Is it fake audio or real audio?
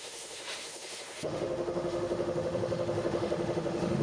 fake